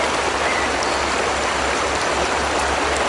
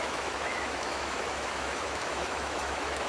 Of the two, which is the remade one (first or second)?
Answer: second